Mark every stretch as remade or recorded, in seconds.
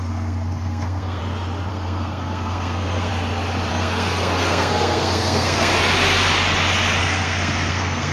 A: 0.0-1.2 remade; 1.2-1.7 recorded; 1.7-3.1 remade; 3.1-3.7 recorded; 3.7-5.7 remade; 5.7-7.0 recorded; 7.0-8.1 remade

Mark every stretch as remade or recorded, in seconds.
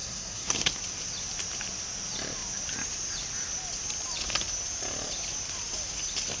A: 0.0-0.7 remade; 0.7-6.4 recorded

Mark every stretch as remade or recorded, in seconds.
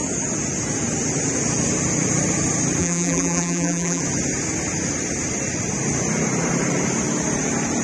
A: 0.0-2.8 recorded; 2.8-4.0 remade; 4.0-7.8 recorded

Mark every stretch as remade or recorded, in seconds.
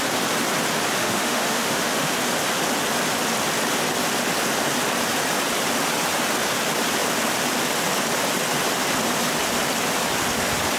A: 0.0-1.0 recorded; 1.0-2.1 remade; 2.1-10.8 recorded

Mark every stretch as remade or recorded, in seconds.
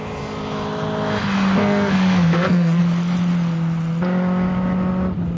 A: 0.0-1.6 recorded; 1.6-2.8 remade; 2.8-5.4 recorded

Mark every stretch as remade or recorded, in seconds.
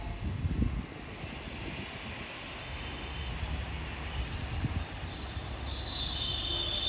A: 0.0-2.6 recorded; 2.6-3.3 remade; 3.3-6.9 recorded